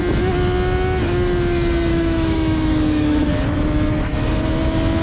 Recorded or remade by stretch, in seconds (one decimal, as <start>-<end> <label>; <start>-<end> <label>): 0.0-1.9 recorded; 1.9-3.3 remade; 3.3-5.0 recorded